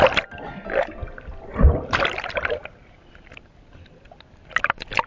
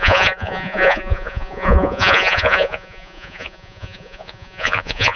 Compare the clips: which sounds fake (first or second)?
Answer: second